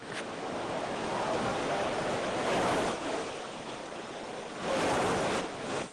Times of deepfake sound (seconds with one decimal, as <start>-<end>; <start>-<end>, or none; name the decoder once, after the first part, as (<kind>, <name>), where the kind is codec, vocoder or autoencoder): 0.0-1.5 (autoencoder, DAC-VAE); 2.1-3.8; 5.4-5.9